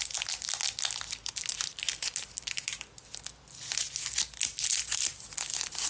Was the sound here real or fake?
real